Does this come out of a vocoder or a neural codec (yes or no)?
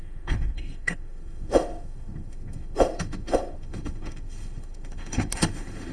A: yes